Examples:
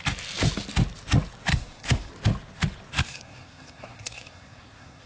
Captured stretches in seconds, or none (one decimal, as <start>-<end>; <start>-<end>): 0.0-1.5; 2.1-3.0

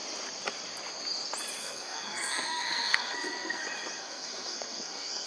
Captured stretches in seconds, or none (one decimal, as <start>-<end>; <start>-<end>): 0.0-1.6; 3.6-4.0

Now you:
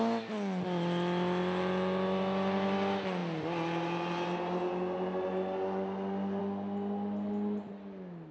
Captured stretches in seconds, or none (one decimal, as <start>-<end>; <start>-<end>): 0.0-8.3